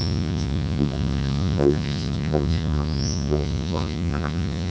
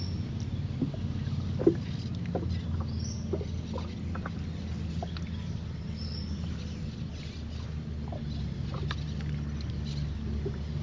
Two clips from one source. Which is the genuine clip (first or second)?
second